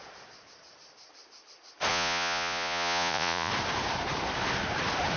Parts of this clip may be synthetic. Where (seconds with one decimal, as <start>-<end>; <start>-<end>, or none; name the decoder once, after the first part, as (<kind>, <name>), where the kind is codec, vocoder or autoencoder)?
1.9-3.5 (vocoder, Vocos)

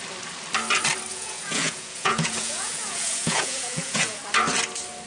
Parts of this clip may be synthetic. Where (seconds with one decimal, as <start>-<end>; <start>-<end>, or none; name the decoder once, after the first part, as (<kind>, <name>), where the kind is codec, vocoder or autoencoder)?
1.1-4.2 (vocoder, Vocos)